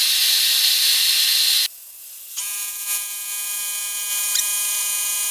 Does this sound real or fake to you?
real